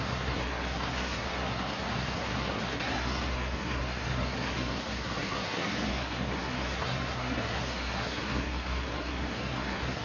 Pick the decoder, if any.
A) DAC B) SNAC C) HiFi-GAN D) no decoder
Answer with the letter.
B